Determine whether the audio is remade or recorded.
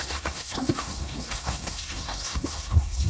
remade